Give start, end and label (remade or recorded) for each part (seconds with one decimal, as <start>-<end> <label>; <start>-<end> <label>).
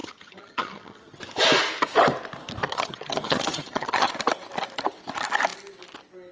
0.0-1.2 remade; 1.2-2.6 recorded; 2.6-4.1 remade; 4.1-6.3 recorded